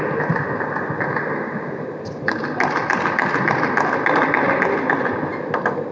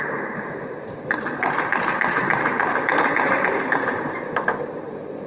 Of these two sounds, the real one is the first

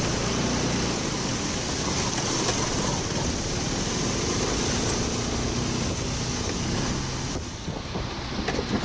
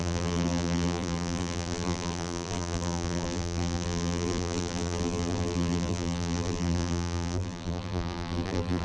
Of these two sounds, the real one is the first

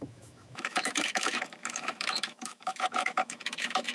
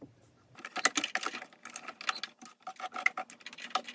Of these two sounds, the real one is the second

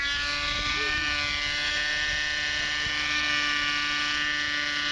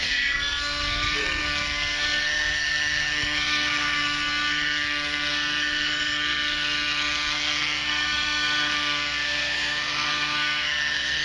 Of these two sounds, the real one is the first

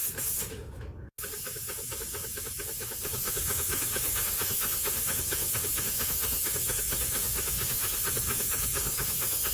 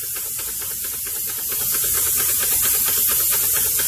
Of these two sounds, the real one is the second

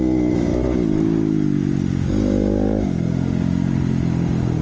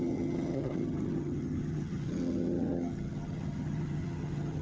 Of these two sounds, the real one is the first